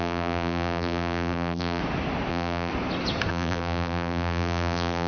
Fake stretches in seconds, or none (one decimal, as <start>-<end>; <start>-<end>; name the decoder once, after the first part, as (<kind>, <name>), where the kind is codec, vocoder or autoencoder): 0.0-1.8 (vocoder, BigVGAN v2); 2.3-2.7; 3.3-5.1